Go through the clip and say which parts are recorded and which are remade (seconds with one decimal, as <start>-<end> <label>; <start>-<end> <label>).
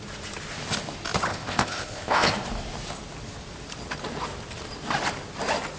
0.0-1.3 recorded; 1.3-2.3 remade; 2.3-5.8 recorded